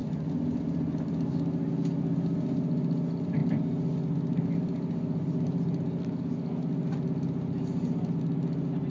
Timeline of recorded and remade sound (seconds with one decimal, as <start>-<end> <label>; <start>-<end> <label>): 0.0-8.9 recorded